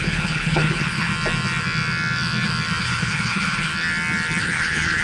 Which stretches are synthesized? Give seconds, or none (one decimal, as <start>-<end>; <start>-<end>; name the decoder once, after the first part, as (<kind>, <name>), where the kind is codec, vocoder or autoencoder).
0.0-1.1 (codec, HILCodec); 2.8-3.7; 4.4-5.0